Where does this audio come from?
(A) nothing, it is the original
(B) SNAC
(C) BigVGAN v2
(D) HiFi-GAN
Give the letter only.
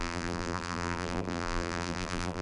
C